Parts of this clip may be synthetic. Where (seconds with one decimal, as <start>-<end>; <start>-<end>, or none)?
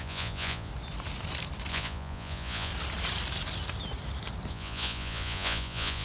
0.0-0.7; 1.7-2.7; 4.5-6.0